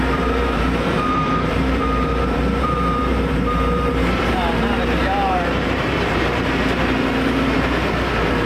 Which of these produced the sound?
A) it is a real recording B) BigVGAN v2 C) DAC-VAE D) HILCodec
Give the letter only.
B